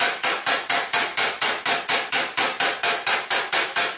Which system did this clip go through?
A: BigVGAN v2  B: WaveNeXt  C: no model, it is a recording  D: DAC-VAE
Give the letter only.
C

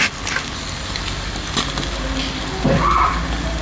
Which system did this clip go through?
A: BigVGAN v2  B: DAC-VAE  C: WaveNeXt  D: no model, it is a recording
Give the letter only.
A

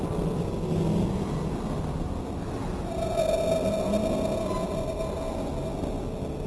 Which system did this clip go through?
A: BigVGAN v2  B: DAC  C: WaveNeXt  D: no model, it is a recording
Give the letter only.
D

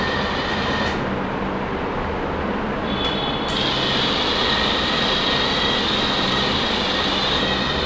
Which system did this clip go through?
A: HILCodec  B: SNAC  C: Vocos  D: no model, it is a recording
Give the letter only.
D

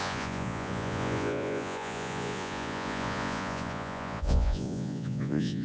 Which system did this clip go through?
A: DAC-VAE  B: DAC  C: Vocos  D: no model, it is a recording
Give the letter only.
C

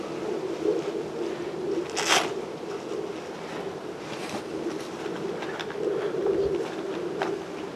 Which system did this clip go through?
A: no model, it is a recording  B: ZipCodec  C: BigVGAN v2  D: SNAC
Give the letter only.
A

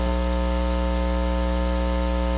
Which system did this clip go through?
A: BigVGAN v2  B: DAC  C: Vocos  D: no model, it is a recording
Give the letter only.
D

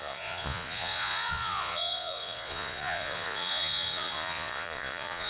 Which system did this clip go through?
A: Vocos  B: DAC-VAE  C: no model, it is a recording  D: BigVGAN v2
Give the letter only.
A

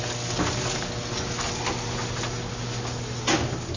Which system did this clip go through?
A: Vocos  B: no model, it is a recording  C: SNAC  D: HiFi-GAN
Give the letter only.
B